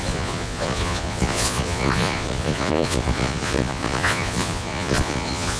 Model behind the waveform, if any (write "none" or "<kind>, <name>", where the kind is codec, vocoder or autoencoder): vocoder, Vocos